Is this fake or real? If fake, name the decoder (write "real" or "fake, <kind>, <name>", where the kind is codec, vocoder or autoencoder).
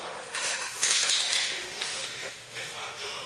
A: fake, autoencoder, DAC-VAE